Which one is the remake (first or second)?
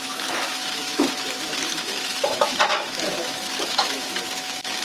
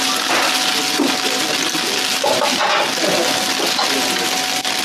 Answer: first